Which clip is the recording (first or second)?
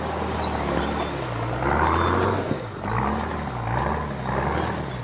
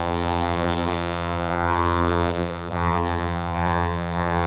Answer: first